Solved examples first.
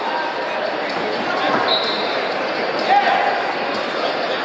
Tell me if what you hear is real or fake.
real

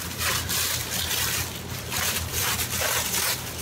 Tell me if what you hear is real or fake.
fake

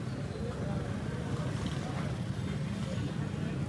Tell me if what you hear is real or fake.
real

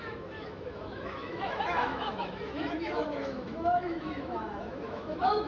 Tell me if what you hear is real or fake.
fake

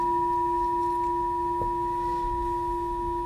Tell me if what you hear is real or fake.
real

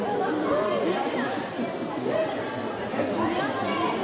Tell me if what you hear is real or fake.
real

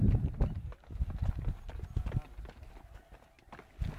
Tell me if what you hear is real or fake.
real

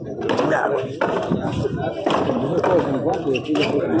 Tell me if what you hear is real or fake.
real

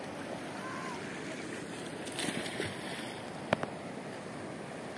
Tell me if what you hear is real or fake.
real